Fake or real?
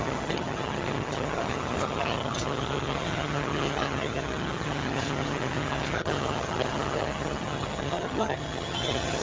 fake